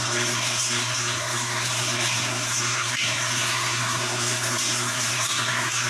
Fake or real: fake